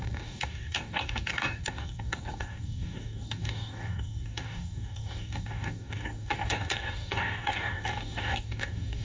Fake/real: fake